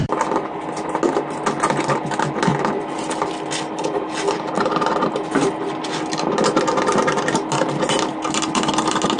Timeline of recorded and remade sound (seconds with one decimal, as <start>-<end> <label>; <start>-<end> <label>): 0.0-9.2 recorded